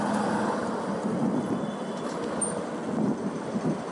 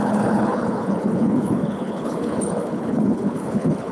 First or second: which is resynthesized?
second